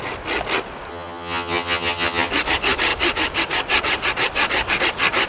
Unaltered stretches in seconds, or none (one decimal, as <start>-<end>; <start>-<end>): 0.0-0.9; 2.3-5.3